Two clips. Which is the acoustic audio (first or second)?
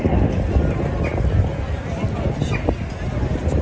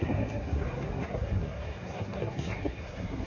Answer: first